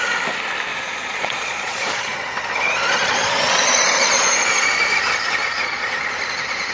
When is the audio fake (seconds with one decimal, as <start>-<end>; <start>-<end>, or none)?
0.7-4.7; 5.4-6.2